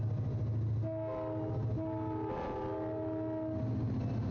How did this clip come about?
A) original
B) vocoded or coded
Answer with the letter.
A